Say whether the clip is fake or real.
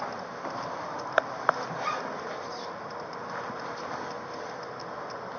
real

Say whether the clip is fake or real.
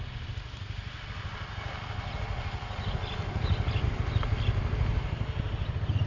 real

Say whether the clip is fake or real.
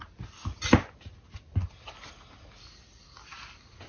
real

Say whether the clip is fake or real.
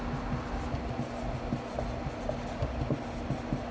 real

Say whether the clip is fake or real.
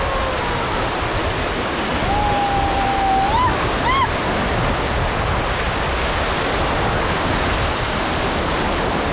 real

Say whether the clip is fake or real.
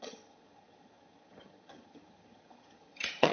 fake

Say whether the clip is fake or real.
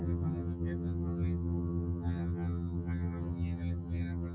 fake